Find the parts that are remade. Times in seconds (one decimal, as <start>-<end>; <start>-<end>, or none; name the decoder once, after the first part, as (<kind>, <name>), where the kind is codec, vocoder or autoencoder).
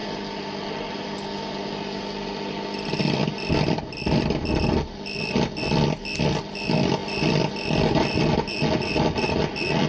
none